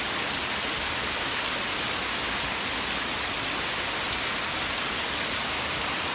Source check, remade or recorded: recorded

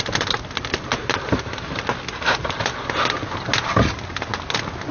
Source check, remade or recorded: recorded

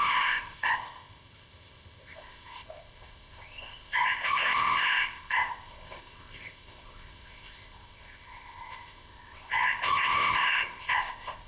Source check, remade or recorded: remade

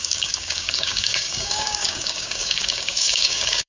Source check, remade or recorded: remade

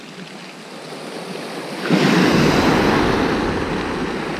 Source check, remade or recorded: recorded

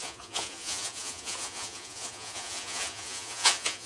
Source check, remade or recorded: remade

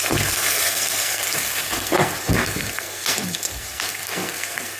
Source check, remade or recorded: remade